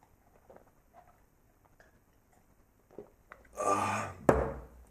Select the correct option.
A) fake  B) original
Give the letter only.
B